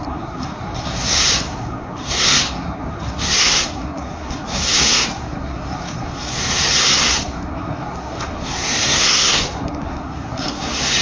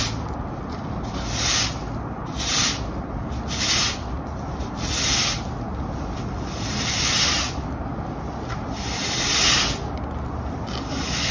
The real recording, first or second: second